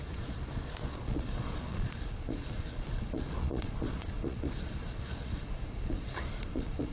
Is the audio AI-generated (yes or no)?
yes